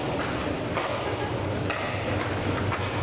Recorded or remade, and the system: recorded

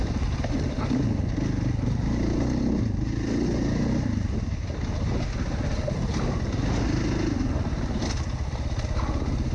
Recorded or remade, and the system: recorded